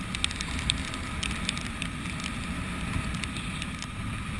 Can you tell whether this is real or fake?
real